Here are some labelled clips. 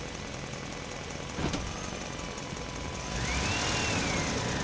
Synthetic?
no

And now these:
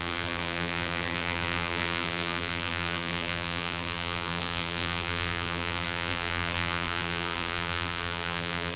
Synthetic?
yes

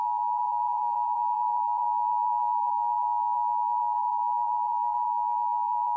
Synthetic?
yes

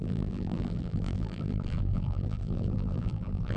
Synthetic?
yes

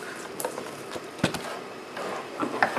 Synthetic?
no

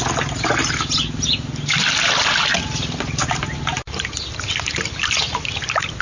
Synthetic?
no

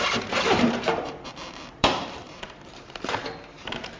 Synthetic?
yes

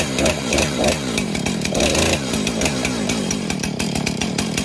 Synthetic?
yes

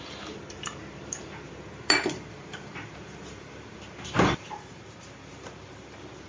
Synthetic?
yes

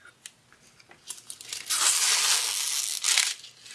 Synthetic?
no